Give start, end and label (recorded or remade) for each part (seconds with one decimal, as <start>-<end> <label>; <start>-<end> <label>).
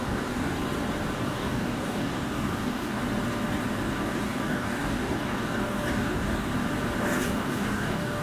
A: 0.0-0.6 remade; 0.6-1.2 recorded; 1.2-3.0 remade; 3.0-3.9 recorded; 3.9-6.5 remade; 6.5-7.0 recorded; 7.0-8.2 remade